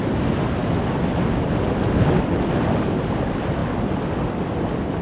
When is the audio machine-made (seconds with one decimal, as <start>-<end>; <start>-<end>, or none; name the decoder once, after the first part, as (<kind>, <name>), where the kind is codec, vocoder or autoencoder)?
none